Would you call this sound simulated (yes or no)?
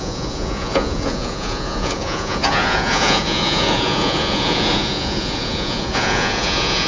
yes